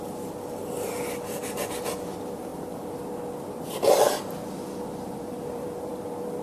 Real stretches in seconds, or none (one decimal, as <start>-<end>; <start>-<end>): 0.0-2.5